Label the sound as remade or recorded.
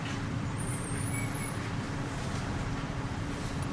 remade